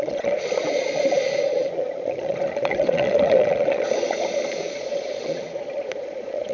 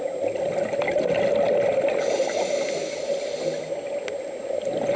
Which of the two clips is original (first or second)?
second